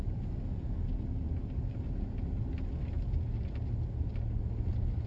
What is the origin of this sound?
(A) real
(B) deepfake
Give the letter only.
A